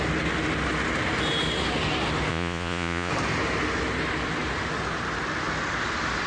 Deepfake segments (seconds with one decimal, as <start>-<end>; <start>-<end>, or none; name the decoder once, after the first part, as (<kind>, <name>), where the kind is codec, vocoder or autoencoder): 2.3-3.1 (vocoder, Vocos)